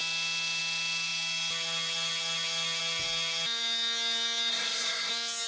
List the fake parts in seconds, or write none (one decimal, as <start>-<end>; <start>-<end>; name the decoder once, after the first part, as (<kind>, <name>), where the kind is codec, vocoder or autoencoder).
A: 4.5-5.1 (codec, SNAC)